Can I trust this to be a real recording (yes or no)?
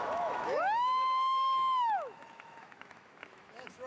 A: no